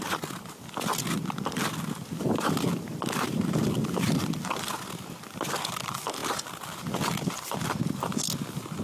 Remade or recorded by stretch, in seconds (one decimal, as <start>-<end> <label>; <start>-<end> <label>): 0.0-8.8 recorded